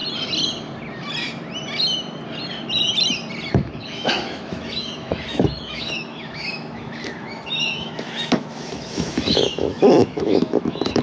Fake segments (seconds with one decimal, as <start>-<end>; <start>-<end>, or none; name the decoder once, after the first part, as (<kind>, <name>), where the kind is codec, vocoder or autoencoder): 3.5-11.0 (autoencoder, DAC-VAE)